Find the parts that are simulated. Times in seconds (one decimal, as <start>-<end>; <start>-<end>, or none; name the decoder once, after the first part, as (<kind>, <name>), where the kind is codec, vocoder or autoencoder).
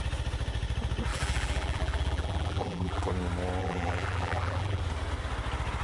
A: 1.1-3.1 (vocoder, BigVGAN v2); 3.6-4.8